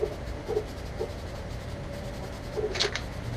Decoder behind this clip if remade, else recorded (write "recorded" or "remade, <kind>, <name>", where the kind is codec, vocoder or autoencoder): recorded